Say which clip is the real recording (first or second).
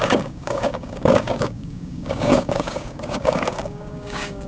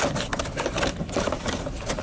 second